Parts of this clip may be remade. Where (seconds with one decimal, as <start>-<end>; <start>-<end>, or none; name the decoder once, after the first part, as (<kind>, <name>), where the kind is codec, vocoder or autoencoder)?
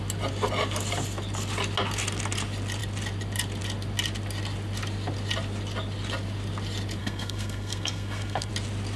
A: 7.0-8.5 (codec, SNAC)